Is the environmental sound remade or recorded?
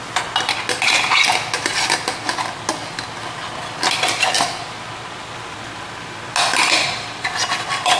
recorded